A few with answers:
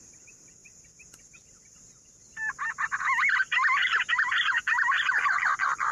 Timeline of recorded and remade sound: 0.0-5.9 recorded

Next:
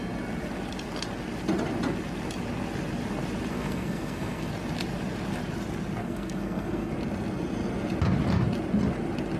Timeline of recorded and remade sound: 0.0-3.5 recorded; 3.5-4.5 remade; 4.5-6.0 recorded; 6.0-6.9 remade; 6.9-9.4 recorded

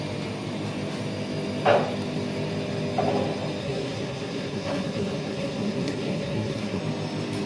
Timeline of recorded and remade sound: 0.0-3.6 recorded; 3.6-6.8 remade; 6.8-7.5 recorded

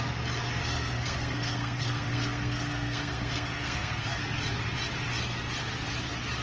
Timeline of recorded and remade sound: 0.0-0.6 recorded; 0.6-4.2 remade; 4.2-6.4 recorded